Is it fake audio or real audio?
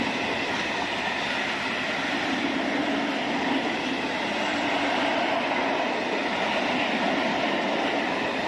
real